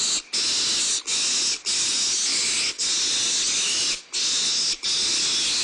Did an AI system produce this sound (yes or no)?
no